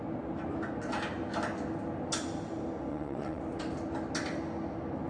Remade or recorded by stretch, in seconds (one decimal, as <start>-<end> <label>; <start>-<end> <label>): 0.0-2.9 recorded; 2.9-3.4 remade; 3.4-5.1 recorded